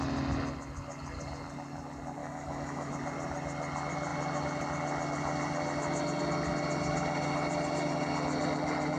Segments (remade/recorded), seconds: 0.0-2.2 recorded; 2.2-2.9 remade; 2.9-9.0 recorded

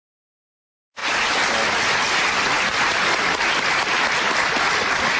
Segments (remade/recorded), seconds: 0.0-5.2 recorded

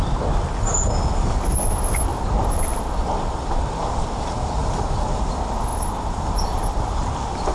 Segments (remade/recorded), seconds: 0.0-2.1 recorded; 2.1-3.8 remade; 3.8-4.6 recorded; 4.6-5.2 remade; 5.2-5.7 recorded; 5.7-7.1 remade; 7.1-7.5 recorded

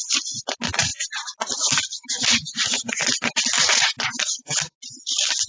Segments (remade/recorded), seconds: 0.0-5.5 recorded

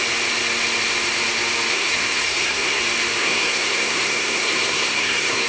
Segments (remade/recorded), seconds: 0.0-1.7 recorded; 1.7-2.8 remade; 2.8-3.2 recorded; 3.2-5.5 remade